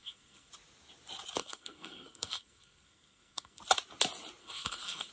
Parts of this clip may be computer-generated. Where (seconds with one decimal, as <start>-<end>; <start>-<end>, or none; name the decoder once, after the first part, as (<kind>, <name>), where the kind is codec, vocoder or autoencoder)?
0.0-0.5 (codec, SNAC); 1.4-3.6; 4.4-5.1